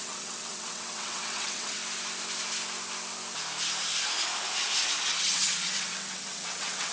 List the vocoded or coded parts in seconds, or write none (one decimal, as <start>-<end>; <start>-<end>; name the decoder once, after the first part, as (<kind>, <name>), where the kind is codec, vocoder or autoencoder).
0.0-1.8 (vocoder, WaveNeXt); 5.2-6.9